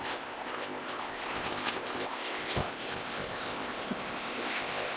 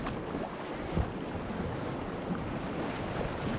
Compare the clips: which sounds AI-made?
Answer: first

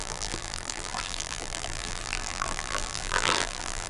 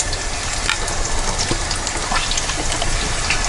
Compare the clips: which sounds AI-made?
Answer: first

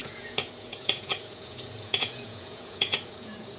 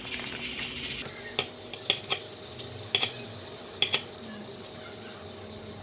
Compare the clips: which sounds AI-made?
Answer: first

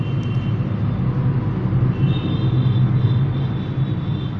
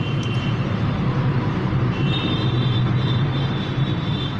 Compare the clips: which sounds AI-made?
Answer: second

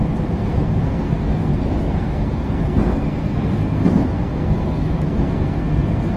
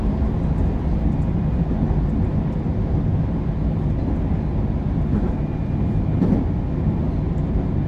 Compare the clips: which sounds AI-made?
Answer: first